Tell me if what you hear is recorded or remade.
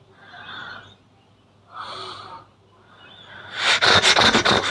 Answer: recorded